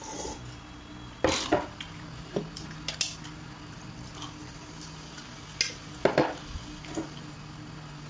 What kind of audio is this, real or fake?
real